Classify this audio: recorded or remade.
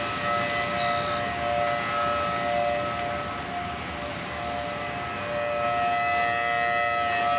recorded